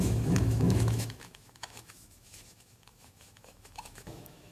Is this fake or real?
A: fake